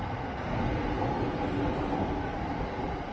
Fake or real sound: fake